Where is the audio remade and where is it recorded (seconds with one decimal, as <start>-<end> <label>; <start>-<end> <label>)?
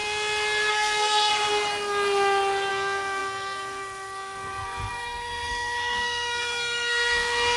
0.0-0.7 recorded; 0.7-1.3 remade; 1.3-2.7 recorded; 2.7-7.6 remade